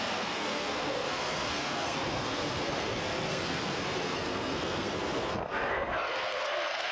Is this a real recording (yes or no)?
no